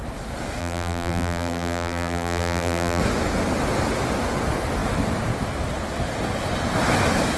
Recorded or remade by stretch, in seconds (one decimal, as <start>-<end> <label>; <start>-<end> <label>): 0.0-0.6 recorded; 0.6-3.0 remade; 3.0-7.4 recorded